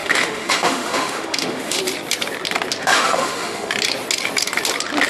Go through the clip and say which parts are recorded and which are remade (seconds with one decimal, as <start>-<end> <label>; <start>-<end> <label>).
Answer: 0.0-1.8 remade; 1.8-2.8 recorded; 2.8-3.7 remade; 3.7-5.1 recorded